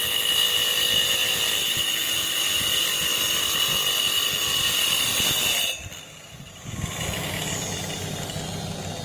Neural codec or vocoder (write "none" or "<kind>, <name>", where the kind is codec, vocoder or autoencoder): none